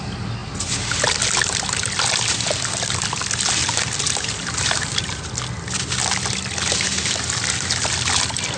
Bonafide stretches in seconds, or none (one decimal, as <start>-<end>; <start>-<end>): 0.0-3.6; 5.2-8.6